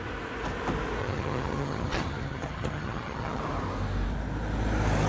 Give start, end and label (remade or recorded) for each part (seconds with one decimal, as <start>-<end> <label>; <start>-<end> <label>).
0.0-1.0 recorded; 1.0-3.4 remade; 3.4-5.1 recorded